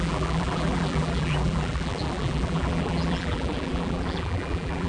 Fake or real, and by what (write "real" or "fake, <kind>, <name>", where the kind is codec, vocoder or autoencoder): fake, vocoder, BigVGAN v2